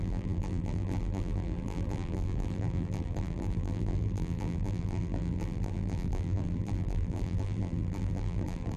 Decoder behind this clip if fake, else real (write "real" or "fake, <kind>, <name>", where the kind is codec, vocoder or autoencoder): fake, vocoder, BigVGAN v2